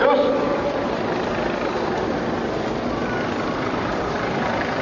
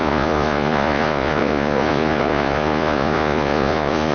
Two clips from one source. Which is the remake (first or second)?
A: second